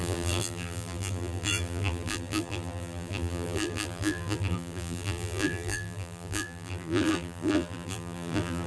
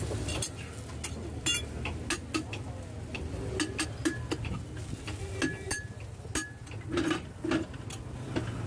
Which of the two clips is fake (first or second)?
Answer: first